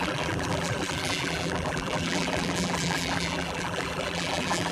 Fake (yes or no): yes